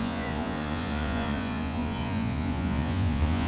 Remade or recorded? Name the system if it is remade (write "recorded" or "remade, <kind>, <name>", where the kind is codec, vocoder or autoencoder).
remade, vocoder, Vocos